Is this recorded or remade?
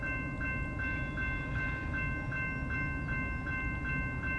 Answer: recorded